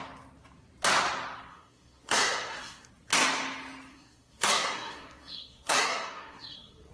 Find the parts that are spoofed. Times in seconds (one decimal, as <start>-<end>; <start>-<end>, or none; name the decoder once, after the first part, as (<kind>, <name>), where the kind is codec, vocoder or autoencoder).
1.5-2.9 (codec, SNAC); 3.9-6.9